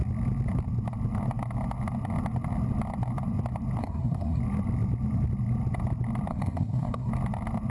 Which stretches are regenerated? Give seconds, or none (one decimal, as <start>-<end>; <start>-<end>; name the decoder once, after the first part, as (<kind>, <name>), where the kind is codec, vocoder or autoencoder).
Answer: 3.8-4.4 (codec, SNAC); 6.3-7.1